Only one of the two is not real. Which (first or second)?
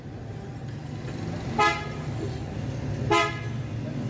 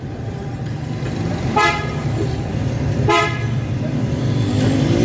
second